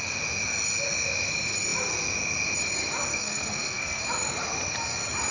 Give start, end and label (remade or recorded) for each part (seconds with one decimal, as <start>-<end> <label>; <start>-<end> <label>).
0.0-3.1 recorded; 3.1-4.0 remade; 4.0-5.3 recorded